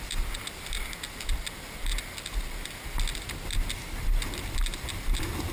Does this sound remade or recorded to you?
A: recorded